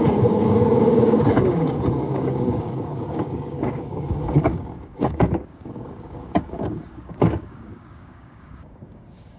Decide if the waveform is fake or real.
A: fake